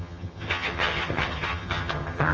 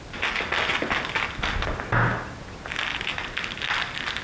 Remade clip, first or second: first